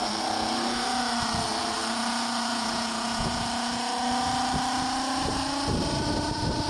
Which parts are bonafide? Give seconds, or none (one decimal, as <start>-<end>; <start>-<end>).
0.0-2.5; 3.4-6.7